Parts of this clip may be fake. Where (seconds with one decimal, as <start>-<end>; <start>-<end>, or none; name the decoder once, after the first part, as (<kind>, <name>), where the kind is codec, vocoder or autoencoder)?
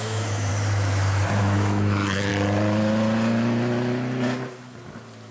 0.0-0.5 (autoencoder, DAC-VAE); 1.4-2.3